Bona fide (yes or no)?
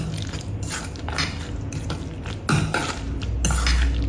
yes